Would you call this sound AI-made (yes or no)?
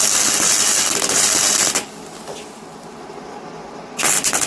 no